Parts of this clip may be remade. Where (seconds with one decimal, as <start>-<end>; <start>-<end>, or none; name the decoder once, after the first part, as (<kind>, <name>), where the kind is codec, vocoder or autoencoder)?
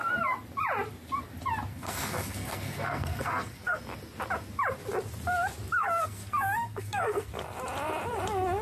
1.7-3.8 (codec, SNAC); 5.8-7.3